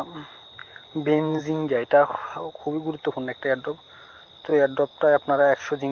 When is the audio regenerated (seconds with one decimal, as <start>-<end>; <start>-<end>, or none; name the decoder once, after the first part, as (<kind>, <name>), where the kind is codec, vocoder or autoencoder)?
0.6-1.4 (vocoder, BigVGAN v2); 4.5-5.9

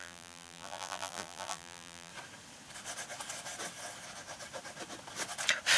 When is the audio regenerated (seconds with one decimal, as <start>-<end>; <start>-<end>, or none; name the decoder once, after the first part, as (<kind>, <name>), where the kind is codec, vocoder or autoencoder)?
0.0-2.1 (vocoder, BigVGAN v2)

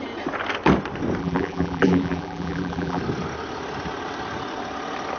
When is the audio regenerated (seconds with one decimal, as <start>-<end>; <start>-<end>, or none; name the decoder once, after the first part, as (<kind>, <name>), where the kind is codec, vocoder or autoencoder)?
1.2-3.0 (vocoder, BigVGAN v2)

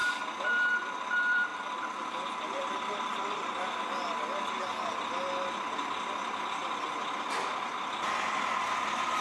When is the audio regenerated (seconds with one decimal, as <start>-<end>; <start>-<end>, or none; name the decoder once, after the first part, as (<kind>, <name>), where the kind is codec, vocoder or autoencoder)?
0.0-3.1 (vocoder, BigVGAN v2); 5.8-6.6; 8.6-9.2

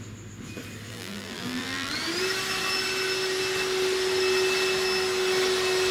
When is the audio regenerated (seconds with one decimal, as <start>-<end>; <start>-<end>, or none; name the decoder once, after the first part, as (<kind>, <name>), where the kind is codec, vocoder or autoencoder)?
0.9-1.9 (vocoder, BigVGAN v2)

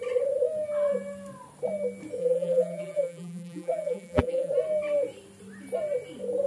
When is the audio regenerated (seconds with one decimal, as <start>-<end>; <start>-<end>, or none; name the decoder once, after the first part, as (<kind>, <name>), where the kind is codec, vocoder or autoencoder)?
2.2-4.5 (vocoder, BigVGAN v2)

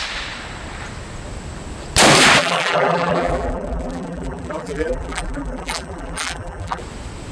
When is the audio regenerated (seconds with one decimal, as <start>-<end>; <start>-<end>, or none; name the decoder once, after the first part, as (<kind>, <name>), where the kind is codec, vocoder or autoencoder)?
2.4-6.8 (vocoder, BigVGAN v2)